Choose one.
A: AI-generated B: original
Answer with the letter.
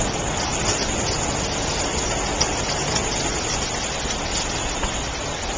B